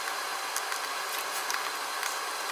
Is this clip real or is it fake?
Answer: real